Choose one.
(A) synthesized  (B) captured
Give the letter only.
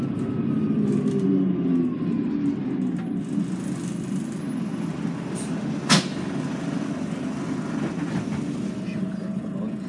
B